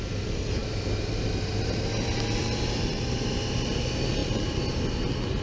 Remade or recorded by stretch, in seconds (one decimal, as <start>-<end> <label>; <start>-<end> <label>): 0.0-0.6 recorded; 0.6-3.8 remade; 3.8-4.2 recorded; 4.2-4.8 remade; 4.8-5.4 recorded